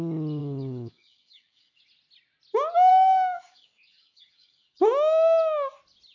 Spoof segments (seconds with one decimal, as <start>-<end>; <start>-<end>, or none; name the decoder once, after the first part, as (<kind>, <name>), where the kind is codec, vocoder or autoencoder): 0.4-1.8 (codec, DAC); 2.9-4.8